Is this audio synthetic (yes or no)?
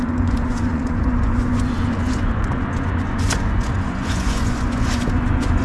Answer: yes